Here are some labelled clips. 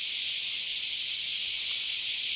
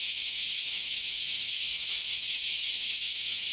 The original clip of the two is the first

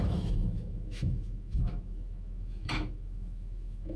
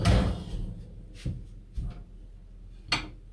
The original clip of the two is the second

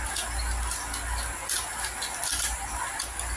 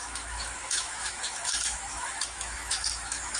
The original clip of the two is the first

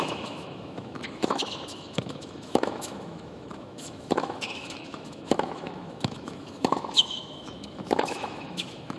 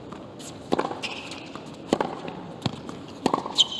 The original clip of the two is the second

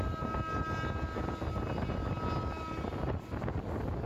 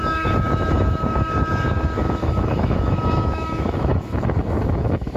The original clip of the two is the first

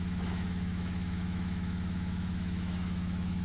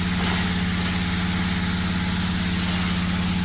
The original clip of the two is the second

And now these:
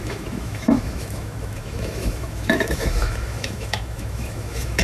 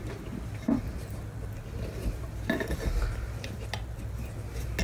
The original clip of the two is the second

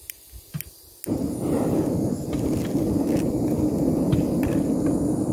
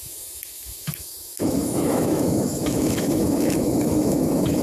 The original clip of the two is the first